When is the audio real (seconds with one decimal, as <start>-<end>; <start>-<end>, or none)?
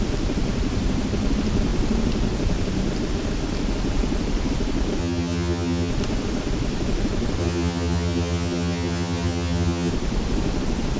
0.0-5.0; 5.9-7.4; 9.9-11.0